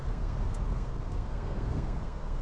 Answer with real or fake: fake